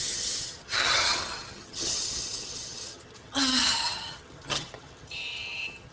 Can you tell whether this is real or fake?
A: fake